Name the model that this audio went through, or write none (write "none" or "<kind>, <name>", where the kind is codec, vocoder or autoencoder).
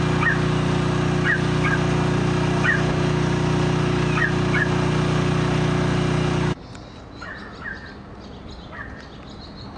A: none